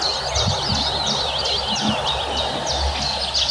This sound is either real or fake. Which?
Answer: real